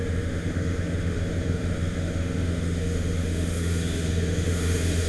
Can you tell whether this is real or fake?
fake